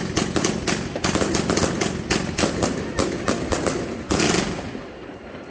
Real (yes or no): yes